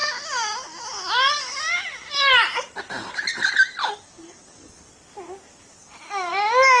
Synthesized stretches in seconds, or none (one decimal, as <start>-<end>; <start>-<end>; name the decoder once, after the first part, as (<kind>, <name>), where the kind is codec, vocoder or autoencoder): 3.8-4.9 (codec, DAC); 5.8-6.3